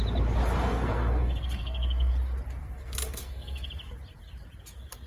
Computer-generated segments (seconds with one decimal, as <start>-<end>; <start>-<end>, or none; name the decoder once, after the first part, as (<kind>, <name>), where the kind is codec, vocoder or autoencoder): 0.6-2.1 (codec, SNAC); 2.6-3.7